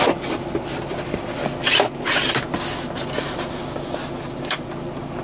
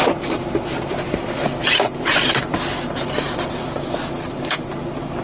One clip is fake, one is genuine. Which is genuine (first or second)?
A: first